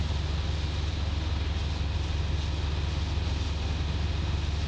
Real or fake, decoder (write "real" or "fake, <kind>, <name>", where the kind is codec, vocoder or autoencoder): real